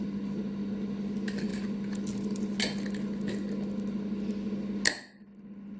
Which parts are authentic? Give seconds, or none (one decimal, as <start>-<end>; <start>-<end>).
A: 0.0-5.8